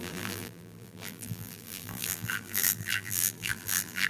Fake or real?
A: fake